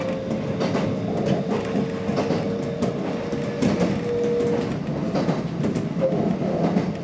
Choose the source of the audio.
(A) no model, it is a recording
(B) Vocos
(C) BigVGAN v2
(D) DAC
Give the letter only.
A